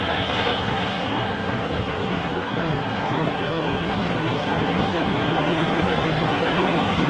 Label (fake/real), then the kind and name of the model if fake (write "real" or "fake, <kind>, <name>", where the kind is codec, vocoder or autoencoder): fake, codec, SNAC